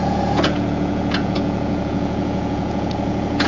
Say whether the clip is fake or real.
fake